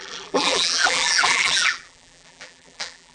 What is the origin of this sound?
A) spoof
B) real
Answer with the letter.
A